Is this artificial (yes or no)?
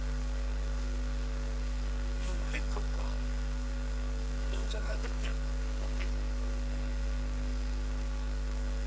yes